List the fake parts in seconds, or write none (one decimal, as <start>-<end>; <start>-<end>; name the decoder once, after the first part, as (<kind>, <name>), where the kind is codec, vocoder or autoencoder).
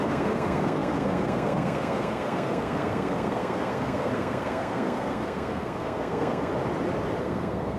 0.0-6.5 (codec, SNAC); 7.2-7.8